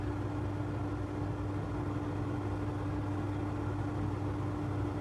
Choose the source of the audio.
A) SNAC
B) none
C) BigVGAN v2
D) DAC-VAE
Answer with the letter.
B